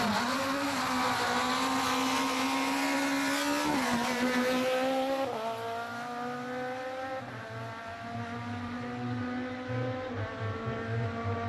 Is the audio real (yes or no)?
yes